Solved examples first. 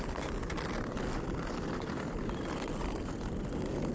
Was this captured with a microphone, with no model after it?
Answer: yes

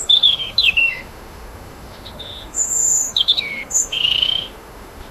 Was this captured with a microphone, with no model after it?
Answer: no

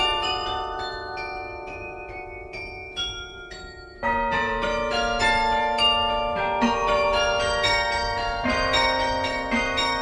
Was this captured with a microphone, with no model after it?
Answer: no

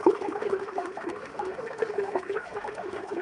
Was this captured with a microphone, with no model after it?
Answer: no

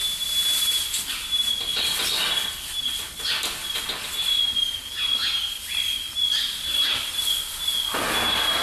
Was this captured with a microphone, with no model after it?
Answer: yes